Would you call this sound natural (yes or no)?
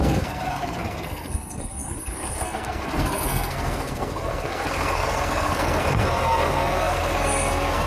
no